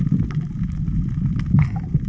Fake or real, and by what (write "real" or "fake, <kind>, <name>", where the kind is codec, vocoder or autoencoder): real